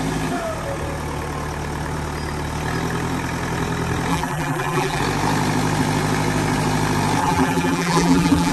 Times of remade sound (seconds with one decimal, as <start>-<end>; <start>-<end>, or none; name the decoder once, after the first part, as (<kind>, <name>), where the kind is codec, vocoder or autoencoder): 4.1-5.0 (vocoder, BigVGAN v2); 7.2-8.5